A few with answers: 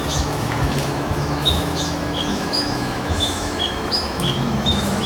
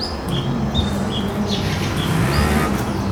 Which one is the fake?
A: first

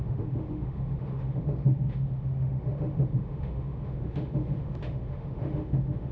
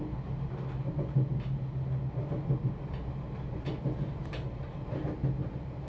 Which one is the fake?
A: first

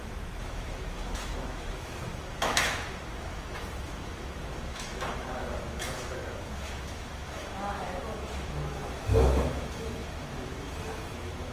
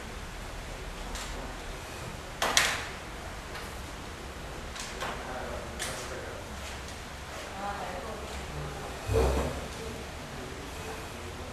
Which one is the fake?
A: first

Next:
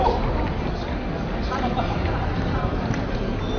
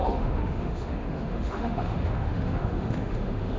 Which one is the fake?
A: second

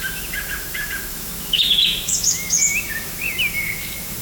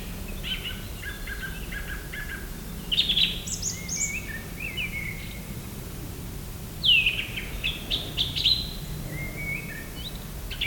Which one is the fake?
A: first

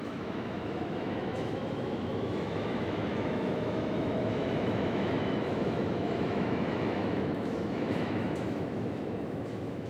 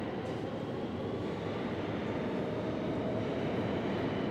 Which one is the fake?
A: first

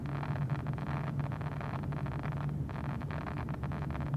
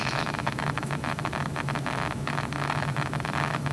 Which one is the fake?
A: second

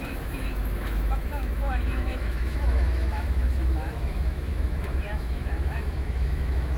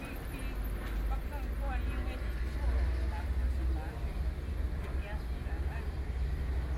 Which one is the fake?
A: first